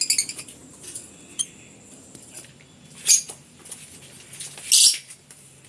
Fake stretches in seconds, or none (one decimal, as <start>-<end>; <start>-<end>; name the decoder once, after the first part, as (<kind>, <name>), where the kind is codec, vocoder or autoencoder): 0.6-4.0 (vocoder, BigVGAN v2)